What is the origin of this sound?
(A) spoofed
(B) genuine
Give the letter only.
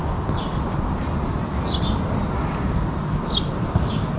B